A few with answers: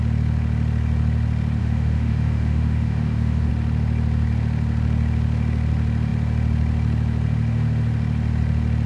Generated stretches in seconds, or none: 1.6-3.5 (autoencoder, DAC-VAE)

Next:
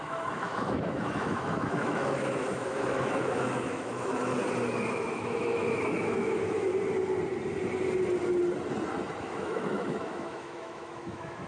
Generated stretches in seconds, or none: 0.0-4.3 (autoencoder, DAC-VAE); 4.9-6.7; 9.2-11.5